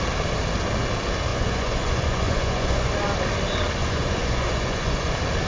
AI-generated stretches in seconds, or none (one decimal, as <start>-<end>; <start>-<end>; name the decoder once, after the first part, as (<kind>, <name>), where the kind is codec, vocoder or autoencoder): 1.3-2.9 (vocoder, Vocos); 3.8-5.1